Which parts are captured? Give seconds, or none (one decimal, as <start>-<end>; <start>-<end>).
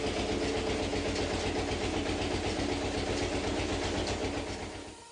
0.0-5.1